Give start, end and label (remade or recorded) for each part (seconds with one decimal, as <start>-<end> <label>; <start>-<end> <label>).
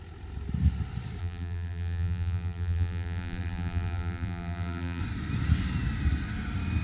0.0-1.2 recorded; 1.2-5.0 remade; 5.0-6.8 recorded